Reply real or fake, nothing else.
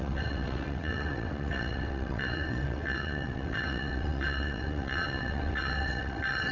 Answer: fake